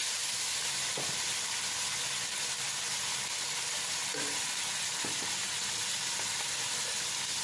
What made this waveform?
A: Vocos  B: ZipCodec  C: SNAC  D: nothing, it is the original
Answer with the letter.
D